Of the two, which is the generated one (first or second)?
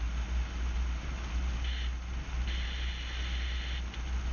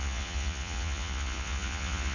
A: second